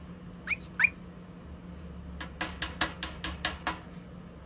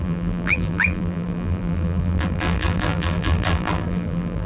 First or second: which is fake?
second